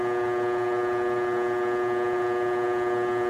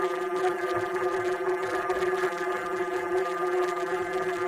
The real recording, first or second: first